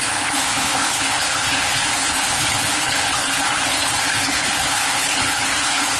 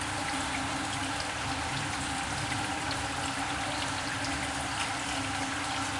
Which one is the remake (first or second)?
first